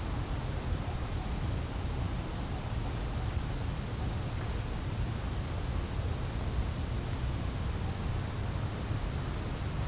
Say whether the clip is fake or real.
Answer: real